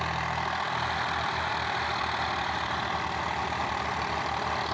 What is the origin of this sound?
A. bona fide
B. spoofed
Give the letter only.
B